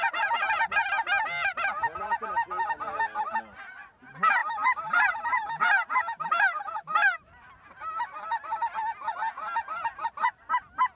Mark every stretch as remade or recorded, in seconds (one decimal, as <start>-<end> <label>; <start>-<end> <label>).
0.0-11.0 recorded